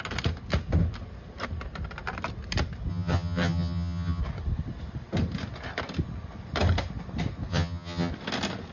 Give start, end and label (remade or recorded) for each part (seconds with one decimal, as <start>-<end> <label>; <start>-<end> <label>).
0.0-2.9 recorded; 2.9-4.2 remade; 4.2-7.5 recorded; 7.5-8.1 remade; 8.1-8.7 recorded